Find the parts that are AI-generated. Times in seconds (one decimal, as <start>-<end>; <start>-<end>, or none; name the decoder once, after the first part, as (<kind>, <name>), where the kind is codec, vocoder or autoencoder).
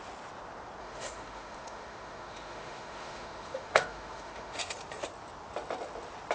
0.8-4.6 (autoencoder, DAC-VAE)